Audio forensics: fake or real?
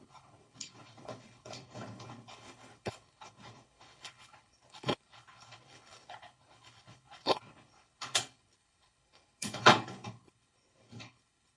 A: fake